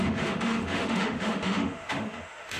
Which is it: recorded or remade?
remade